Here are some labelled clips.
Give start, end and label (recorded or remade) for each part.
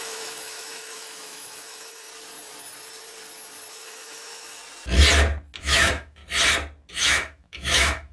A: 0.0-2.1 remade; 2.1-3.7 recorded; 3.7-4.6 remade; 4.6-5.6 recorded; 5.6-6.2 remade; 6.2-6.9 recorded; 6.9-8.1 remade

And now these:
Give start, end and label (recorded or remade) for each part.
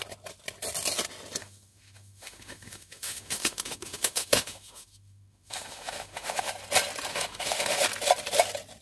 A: 0.0-1.4 recorded; 1.4-6.5 remade; 6.5-7.1 recorded; 7.1-7.8 remade; 7.8-8.8 recorded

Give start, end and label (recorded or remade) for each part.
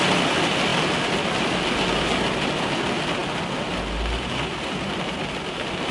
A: 0.0-5.9 recorded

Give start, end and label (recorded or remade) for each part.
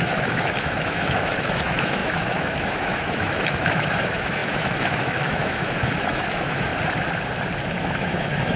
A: 0.0-6.7 remade; 6.7-7.8 recorded; 7.8-8.6 remade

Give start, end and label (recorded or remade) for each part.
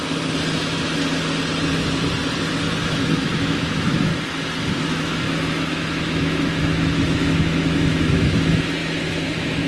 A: 0.0-2.8 recorded; 2.8-4.1 remade; 4.1-4.8 recorded; 4.8-9.7 remade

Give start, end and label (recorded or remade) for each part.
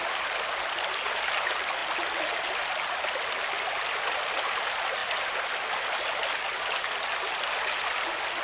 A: 0.0-8.4 recorded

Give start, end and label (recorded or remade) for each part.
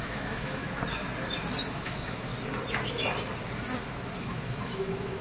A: 0.0-0.6 remade; 0.6-1.7 recorded; 1.7-2.3 remade; 2.3-4.2 recorded; 4.2-5.2 remade